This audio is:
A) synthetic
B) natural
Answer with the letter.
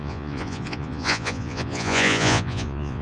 A